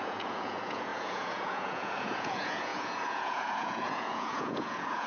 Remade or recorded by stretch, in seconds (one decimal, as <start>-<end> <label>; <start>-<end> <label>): 0.0-5.1 remade